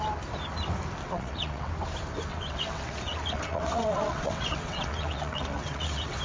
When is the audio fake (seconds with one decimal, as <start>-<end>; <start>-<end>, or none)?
1.0-1.7; 2.3-6.2